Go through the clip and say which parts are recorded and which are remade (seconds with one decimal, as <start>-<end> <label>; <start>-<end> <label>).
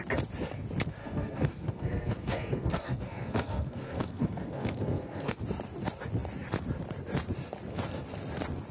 0.0-1.0 recorded; 1.0-5.4 remade; 5.4-8.7 recorded